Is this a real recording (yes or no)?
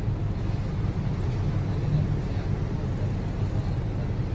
yes